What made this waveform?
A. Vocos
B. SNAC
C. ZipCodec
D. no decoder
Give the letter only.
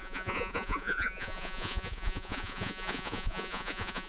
A